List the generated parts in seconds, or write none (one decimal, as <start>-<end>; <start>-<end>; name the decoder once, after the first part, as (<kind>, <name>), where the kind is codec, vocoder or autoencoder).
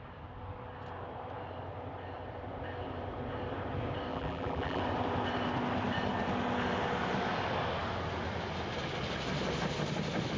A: 4.1-4.8 (vocoder, BigVGAN v2)